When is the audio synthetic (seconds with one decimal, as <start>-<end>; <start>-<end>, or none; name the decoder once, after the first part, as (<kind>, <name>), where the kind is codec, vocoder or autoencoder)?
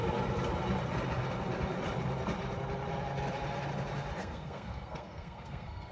4.2-5.9 (codec, SNAC)